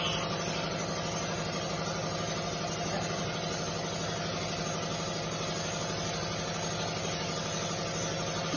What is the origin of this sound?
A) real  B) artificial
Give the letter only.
A